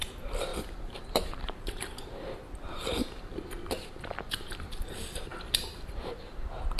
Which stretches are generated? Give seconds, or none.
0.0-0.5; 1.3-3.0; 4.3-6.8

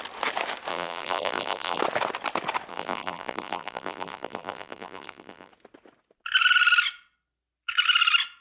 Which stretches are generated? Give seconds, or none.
0.7-1.8; 2.7-5.5

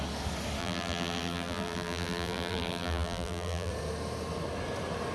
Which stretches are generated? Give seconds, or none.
0.6-3.7

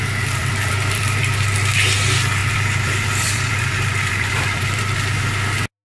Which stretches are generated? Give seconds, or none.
0.4-1.2; 2.4-4.8

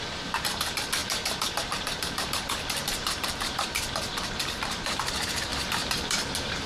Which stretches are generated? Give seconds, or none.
0.0-6.7

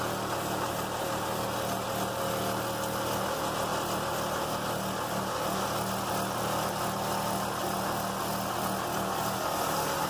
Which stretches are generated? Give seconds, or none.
none